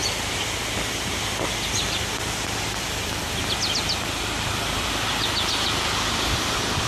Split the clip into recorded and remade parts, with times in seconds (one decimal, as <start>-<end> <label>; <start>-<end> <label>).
0.0-2.6 recorded; 2.6-6.9 remade